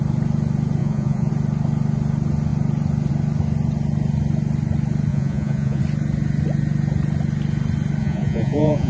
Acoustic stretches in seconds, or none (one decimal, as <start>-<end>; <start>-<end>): 0.0-0.8; 1.3-5.1; 5.8-8.0